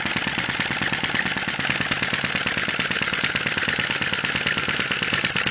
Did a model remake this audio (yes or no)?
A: no